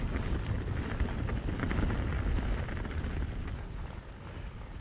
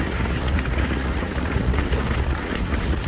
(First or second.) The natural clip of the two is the first